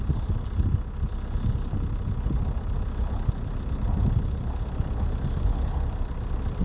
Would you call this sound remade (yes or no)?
no